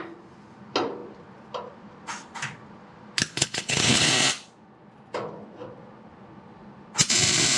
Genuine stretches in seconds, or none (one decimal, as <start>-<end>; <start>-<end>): 0.0-3.3; 4.1-7.6